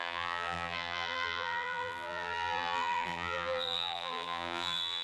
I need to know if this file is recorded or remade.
remade